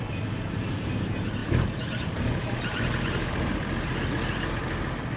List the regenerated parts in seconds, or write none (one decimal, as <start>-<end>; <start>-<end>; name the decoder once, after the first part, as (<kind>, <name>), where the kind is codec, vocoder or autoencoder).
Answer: 1.4-4.0 (vocoder, BigVGAN v2)